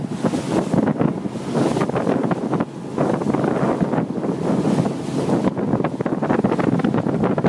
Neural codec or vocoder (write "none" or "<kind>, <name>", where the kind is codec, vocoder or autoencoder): none